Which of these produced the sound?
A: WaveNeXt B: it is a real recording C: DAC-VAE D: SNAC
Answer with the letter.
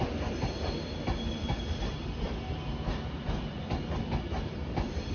B